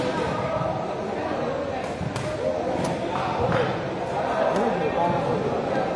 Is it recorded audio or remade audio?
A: recorded